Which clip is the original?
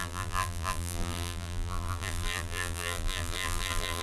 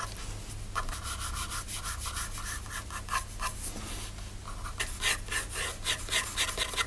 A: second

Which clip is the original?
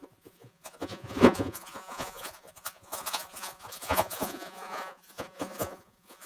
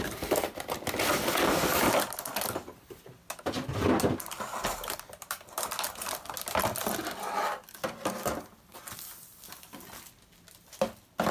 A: second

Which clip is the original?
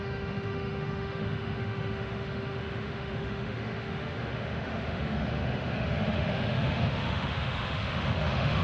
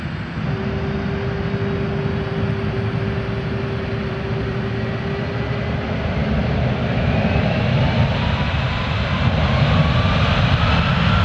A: second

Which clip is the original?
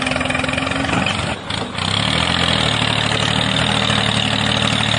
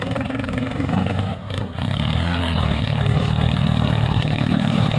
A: first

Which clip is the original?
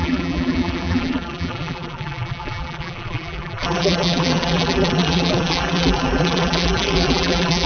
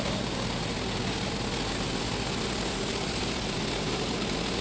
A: second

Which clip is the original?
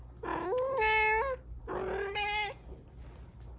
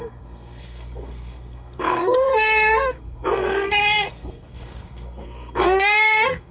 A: first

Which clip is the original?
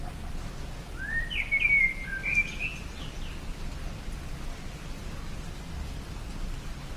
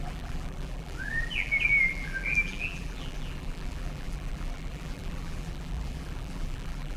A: first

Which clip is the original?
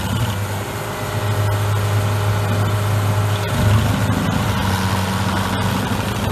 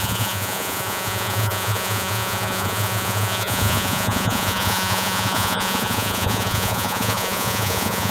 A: first